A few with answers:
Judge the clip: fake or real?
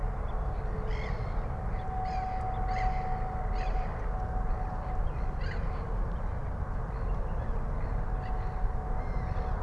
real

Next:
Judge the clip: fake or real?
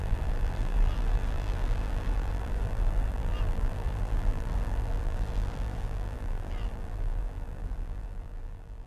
fake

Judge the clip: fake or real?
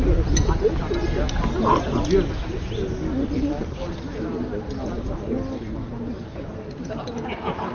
real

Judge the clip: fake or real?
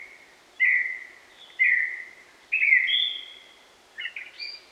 real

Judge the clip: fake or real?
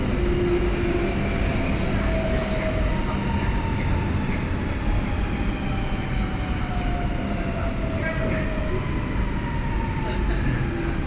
real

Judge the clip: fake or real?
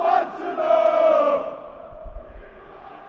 fake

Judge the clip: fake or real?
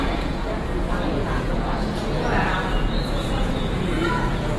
fake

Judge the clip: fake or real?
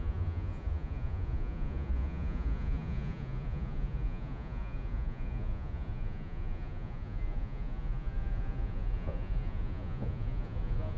fake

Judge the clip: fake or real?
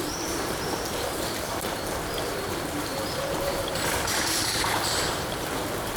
fake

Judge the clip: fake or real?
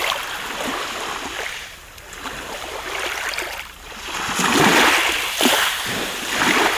real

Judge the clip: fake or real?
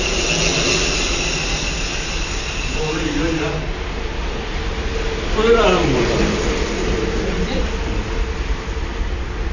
real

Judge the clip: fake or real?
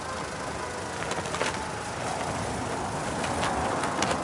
real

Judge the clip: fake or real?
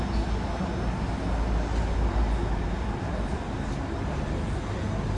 real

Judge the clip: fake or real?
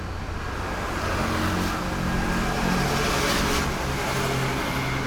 real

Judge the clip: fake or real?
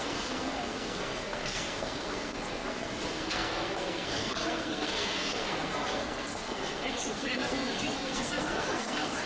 fake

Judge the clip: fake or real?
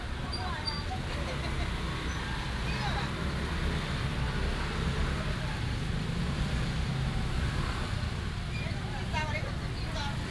real